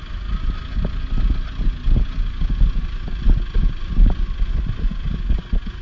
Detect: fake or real real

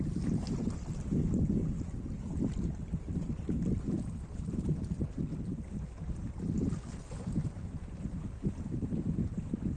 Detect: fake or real real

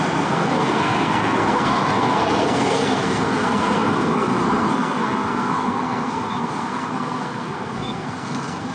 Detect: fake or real fake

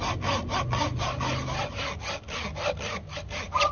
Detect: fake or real real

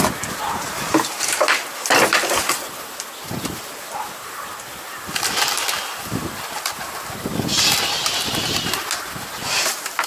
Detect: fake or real real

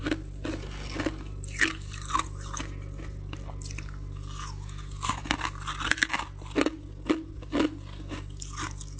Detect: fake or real real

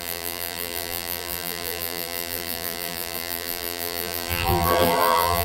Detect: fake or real fake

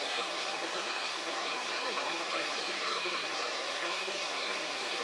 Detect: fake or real fake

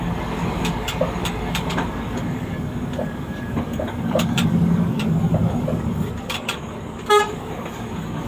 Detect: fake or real fake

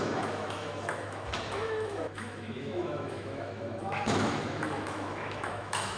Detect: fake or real fake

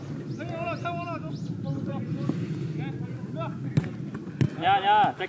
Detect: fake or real real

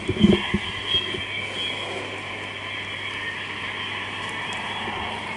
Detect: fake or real real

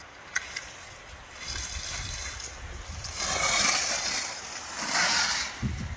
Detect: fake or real real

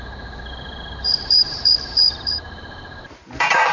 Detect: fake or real fake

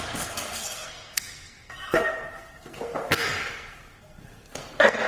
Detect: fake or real fake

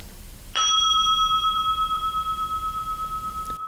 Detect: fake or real fake